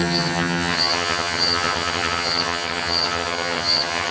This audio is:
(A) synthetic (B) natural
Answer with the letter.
A